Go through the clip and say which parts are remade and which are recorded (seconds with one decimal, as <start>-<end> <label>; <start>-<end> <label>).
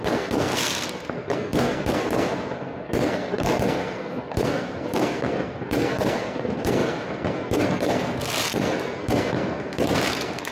0.0-10.5 remade